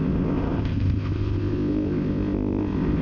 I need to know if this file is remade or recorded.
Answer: remade